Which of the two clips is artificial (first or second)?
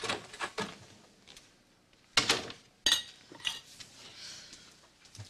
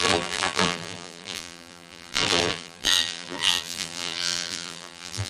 second